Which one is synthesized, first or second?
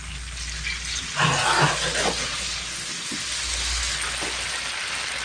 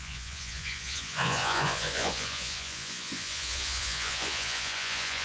second